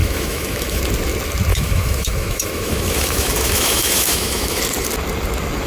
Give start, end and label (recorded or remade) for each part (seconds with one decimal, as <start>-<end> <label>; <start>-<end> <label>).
0.0-0.8 remade; 0.8-1.5 recorded; 1.5-4.6 remade; 4.6-5.7 recorded